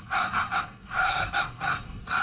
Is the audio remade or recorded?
remade